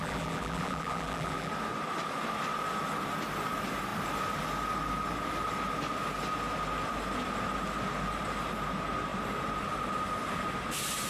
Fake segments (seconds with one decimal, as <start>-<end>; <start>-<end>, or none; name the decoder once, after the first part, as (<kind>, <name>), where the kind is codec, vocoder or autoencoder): 0.0-1.5 (vocoder, BigVGAN v2)

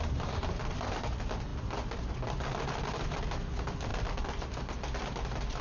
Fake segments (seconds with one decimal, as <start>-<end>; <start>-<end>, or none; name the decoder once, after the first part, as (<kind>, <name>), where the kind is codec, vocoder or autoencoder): 3.9-4.6 (vocoder, BigVGAN v2)

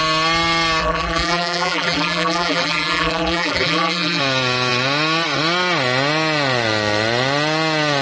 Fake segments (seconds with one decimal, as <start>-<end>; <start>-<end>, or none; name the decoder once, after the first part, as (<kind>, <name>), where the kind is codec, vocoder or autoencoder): 0.8-4.2 (vocoder, BigVGAN v2)

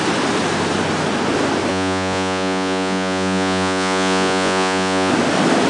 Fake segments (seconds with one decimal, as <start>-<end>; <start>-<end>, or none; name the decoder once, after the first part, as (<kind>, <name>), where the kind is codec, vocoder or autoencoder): 1.7-5.1 (vocoder, Vocos)

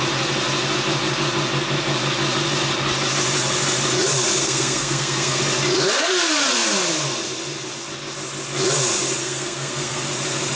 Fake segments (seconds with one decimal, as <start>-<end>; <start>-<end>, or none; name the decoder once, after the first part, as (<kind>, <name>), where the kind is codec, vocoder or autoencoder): 4.4-5.4 (codec, SNAC); 9.2-10.0

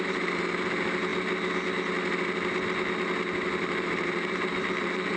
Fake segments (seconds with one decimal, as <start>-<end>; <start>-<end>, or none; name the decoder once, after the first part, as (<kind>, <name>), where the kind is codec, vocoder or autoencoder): 0.0-1.1 (vocoder, BigVGAN v2); 3.5-5.2

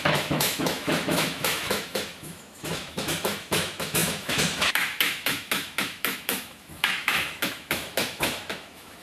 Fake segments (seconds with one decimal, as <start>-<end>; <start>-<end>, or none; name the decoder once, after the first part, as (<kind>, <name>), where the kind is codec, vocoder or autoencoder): 0.0-9.0 (autoencoder, DAC-VAE)